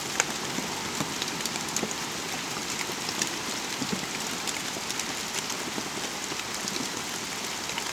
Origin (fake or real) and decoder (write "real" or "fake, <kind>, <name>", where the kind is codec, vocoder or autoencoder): real